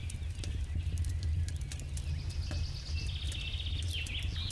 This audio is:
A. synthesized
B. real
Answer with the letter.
B